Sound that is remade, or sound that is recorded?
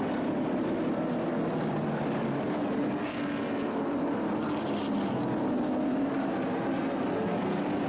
recorded